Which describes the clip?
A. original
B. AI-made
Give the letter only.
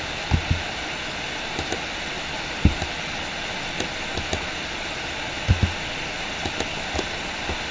A